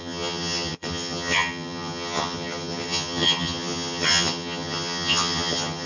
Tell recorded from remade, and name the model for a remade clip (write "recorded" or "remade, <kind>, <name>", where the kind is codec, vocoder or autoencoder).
remade, vocoder, HiFi-GAN